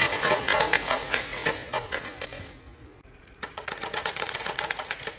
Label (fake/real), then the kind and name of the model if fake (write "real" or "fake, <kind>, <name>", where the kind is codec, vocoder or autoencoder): fake, vocoder, Vocos